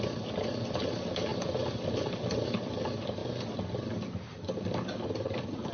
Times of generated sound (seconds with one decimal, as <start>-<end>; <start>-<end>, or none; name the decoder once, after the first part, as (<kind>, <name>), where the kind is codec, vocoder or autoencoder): 1.3-2.6 (vocoder, BigVGAN v2)